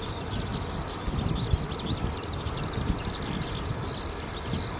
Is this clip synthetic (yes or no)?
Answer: no